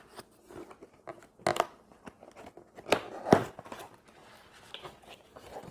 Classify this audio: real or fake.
real